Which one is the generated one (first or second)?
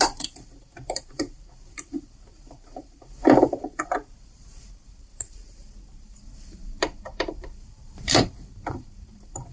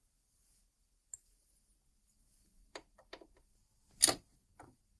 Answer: first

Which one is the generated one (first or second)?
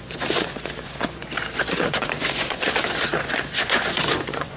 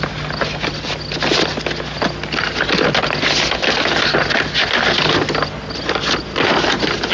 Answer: first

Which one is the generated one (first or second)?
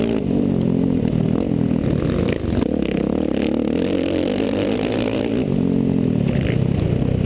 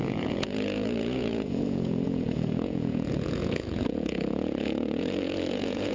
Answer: second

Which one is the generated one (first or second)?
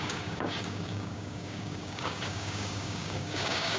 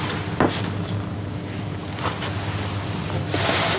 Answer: first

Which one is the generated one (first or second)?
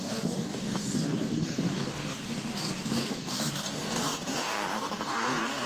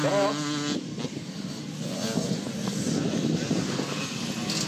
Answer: first